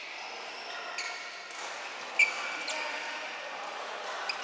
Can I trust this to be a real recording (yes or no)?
yes